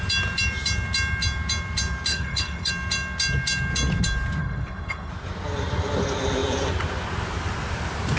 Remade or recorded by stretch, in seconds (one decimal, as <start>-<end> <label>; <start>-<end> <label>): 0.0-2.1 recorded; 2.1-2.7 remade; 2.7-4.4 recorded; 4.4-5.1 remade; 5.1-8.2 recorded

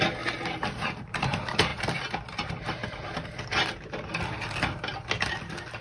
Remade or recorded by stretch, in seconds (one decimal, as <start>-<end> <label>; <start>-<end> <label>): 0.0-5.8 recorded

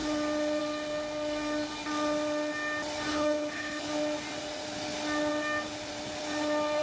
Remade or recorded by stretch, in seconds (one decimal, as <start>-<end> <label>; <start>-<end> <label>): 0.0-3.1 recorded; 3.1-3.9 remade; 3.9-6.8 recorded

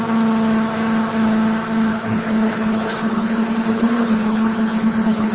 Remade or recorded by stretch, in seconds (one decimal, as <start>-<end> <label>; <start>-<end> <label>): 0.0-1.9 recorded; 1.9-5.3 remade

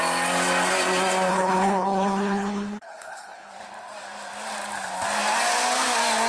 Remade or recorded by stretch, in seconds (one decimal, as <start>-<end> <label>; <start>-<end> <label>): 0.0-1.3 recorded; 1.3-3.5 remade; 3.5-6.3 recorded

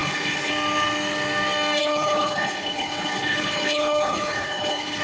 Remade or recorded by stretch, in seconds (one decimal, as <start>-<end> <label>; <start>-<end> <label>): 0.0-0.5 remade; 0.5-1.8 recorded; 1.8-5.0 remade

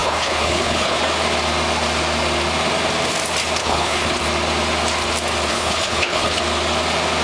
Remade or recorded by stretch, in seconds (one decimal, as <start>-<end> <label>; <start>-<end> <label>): 0.0-1.0 remade; 1.0-3.6 recorded; 3.6-4.2 remade; 4.2-5.5 recorded; 5.5-6.4 remade; 6.4-7.2 recorded